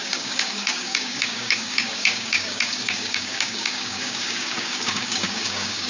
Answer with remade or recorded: remade